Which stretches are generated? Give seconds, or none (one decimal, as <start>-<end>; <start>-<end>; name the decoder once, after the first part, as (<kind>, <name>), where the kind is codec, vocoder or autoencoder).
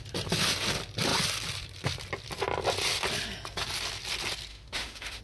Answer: 4.5-5.2 (autoencoder, DAC-VAE)